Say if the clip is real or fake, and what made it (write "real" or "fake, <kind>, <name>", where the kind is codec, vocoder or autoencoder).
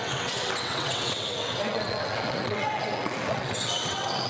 fake, vocoder, WaveNeXt